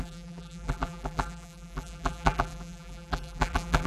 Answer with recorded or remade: remade